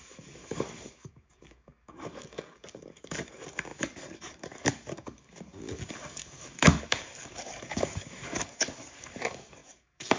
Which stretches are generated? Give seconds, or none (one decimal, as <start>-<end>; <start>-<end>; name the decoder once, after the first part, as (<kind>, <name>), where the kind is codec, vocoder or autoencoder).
0.0-10.2 (codec, DAC)